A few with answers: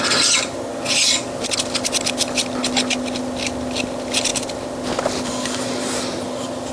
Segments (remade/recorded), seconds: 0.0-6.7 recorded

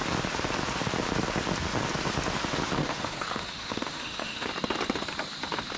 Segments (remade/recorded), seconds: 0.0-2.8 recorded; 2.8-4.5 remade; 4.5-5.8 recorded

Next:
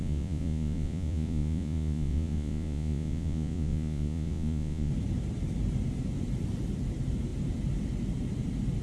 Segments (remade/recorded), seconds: 0.0-4.9 remade; 4.9-8.8 recorded